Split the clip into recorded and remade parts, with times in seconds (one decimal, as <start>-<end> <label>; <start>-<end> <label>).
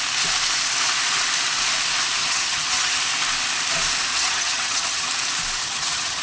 0.0-2.2 recorded; 2.2-3.0 remade; 3.0-4.1 recorded; 4.1-5.1 remade; 5.1-5.6 recorded; 5.6-6.2 remade